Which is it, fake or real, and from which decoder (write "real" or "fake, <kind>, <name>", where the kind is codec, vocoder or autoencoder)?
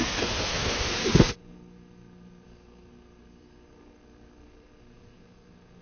fake, codec, SNAC